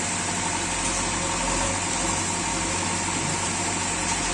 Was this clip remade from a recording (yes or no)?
no